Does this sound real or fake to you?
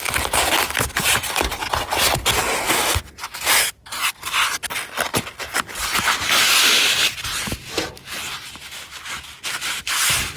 real